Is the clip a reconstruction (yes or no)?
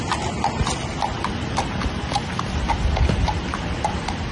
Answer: no